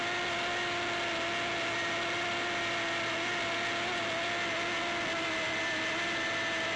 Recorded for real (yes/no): yes